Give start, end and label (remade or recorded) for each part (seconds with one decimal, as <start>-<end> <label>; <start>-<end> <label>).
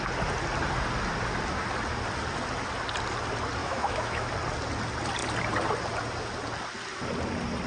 0.0-3.6 recorded; 3.6-4.3 remade; 4.3-7.7 recorded